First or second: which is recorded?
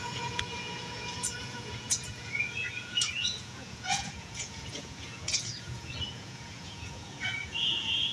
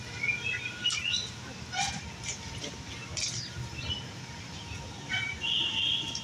second